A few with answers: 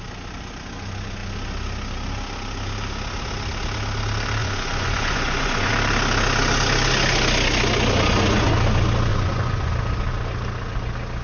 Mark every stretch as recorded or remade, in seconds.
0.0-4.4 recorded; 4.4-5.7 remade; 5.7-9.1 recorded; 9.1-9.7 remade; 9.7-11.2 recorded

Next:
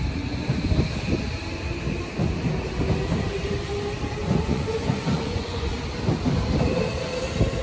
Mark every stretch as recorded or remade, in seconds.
0.0-4.2 recorded; 4.2-5.7 remade; 5.7-7.6 recorded

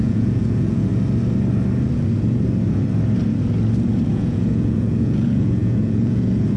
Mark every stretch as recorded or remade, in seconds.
0.0-0.9 remade; 0.9-4.1 recorded; 4.1-6.6 remade

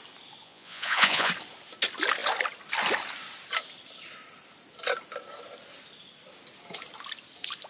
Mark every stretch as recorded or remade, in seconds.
0.0-0.4 recorded; 0.4-1.3 remade; 1.3-7.7 recorded

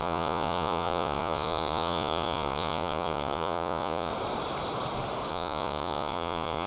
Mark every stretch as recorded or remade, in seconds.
0.0-4.1 remade; 4.1-5.3 recorded; 5.3-6.7 remade

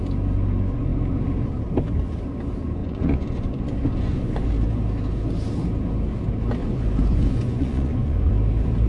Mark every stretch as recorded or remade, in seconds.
0.0-2.8 recorded; 2.8-4.5 remade; 4.5-6.6 recorded; 6.6-8.3 remade; 8.3-8.9 recorded